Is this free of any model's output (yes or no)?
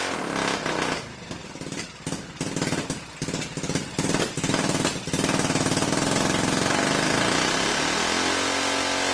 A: yes